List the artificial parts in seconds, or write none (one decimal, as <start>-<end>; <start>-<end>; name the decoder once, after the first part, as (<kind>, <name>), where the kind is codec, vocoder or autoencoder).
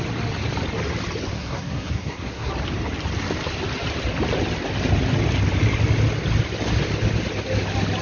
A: 1.3-2.5 (codec, SNAC)